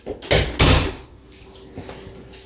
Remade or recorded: recorded